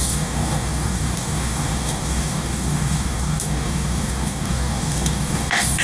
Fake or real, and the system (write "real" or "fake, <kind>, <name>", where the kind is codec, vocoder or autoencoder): fake, codec, DAC